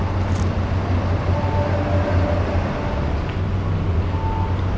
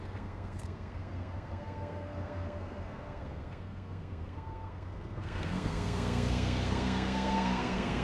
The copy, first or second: second